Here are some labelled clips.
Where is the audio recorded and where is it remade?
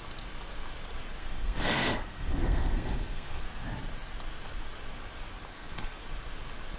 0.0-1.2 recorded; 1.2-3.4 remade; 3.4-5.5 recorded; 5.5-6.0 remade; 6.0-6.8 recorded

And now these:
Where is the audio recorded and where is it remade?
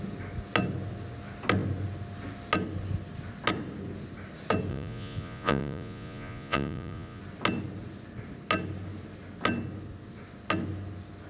0.0-4.7 recorded; 4.7-7.2 remade; 7.2-11.3 recorded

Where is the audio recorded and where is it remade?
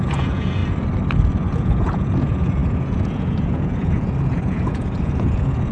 0.0-0.6 remade; 0.6-1.5 recorded; 1.5-5.7 remade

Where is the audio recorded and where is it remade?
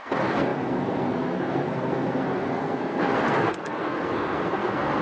0.0-5.0 remade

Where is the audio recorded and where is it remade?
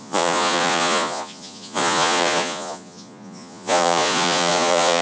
0.0-5.0 remade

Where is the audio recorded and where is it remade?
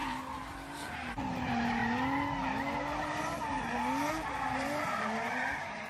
0.0-1.8 remade; 1.8-4.1 recorded; 4.1-5.9 remade